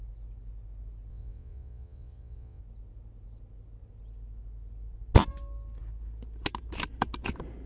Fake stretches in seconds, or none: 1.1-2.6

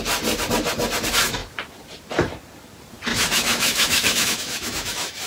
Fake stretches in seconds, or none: 3.1-5.3

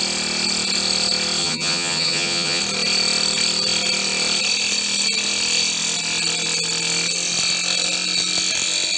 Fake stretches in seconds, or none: 1.4-2.6

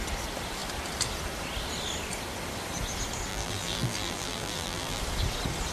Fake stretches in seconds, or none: 3.3-5.0

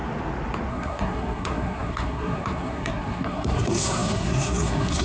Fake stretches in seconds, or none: 0.7-5.0

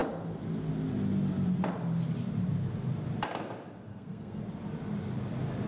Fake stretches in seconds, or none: 3.9-4.4